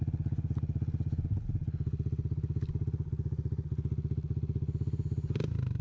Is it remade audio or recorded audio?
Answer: recorded